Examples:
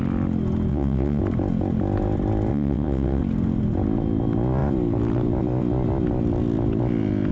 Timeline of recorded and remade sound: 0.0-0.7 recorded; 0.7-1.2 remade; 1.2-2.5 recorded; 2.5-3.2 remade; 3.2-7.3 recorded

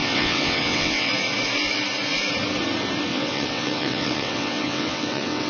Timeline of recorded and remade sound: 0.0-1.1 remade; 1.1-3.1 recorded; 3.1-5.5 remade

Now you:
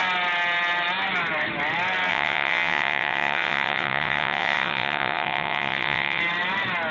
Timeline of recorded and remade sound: 0.0-2.1 recorded; 2.1-6.2 remade; 6.2-6.9 recorded